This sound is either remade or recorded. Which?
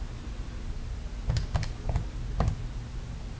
recorded